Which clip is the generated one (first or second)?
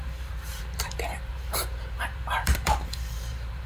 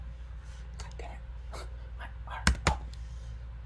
first